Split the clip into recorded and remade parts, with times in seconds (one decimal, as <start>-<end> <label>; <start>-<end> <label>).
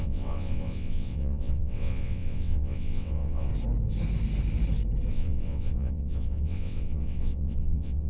0.0-3.5 remade; 3.5-5.1 recorded; 5.1-8.1 remade